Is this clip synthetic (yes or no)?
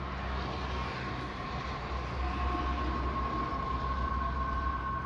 no